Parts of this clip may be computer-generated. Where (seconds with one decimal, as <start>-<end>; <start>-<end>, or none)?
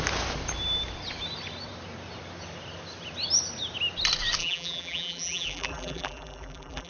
4.4-6.9